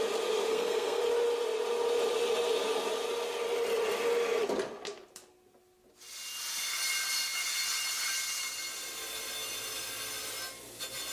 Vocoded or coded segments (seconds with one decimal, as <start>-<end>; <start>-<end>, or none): 0.5-1.0